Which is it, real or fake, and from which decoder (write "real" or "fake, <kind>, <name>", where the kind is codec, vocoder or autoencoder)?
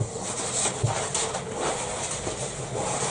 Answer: real